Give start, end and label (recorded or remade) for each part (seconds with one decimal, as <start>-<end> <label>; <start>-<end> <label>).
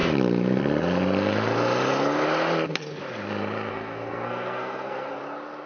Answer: 0.0-3.7 recorded; 3.7-5.2 remade; 5.2-5.7 recorded